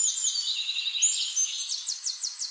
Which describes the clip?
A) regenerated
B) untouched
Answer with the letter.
B